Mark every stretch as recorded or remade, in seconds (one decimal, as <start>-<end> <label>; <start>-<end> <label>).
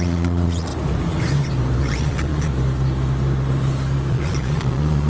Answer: 0.0-0.7 remade; 0.7-1.8 recorded; 1.8-2.5 remade; 2.5-4.1 recorded; 4.1-5.1 remade